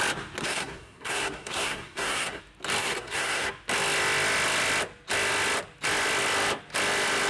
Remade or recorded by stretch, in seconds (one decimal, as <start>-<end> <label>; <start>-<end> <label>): 0.0-0.4 recorded; 0.4-2.4 remade; 2.4-2.8 recorded; 2.8-3.5 remade; 3.5-7.3 recorded